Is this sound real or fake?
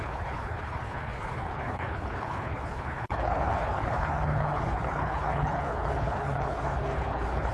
fake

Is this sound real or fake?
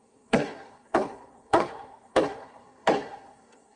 fake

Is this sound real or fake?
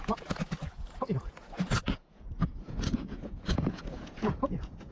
fake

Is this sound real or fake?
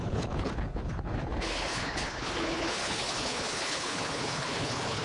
fake